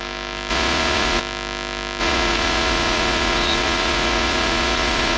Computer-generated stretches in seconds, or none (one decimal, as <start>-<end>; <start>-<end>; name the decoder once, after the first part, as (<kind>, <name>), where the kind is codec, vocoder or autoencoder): 0.5-1.2 (vocoder, Vocos); 2.0-5.2

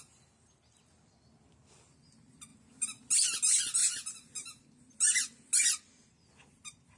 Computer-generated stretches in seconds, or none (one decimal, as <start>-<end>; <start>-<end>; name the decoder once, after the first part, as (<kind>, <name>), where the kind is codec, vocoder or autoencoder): none

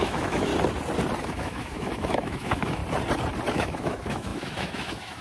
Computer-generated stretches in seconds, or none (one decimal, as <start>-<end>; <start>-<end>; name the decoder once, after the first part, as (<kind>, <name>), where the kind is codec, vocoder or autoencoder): 0.0-0.5 (autoencoder, DAC-VAE); 1.2-2.8; 3.5-5.2

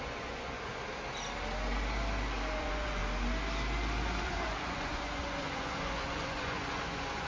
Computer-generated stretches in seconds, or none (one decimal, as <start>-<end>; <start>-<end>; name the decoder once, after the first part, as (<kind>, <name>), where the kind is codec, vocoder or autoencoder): 0.0-0.7 (vocoder, Vocos); 2.6-3.0; 4.2-7.3

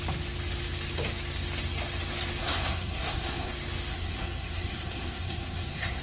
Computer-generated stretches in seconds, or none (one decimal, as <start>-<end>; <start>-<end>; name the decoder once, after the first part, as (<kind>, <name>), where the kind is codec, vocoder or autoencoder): 2.4-3.5 (codec, SNAC); 3.9-6.0